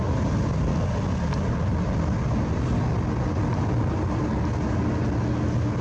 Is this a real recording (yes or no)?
yes